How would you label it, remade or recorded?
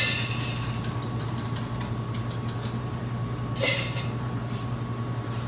remade